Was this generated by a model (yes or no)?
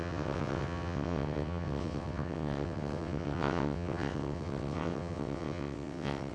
yes